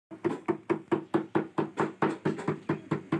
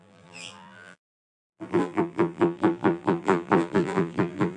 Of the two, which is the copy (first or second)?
second